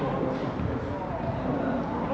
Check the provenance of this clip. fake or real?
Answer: real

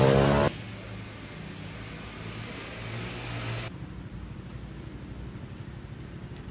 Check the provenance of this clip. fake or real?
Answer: real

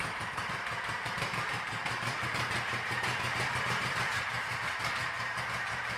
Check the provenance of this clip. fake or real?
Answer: fake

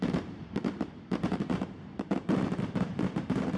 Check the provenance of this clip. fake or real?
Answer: fake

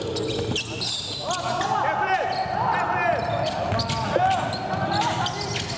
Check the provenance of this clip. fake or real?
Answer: real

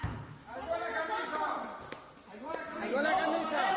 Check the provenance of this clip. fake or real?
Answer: fake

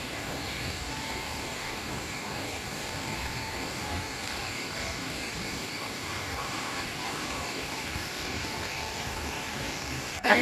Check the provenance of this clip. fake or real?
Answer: fake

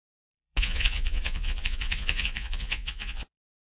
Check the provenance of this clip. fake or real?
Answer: fake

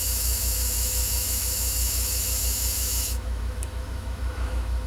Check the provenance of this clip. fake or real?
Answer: fake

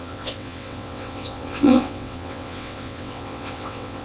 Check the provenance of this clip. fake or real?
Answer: fake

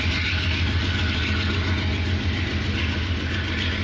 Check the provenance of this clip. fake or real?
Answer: real